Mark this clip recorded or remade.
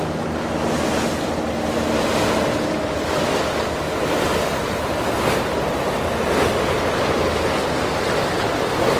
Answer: recorded